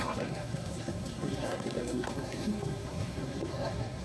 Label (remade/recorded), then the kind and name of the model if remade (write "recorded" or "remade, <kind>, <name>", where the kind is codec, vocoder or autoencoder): remade, codec, SNAC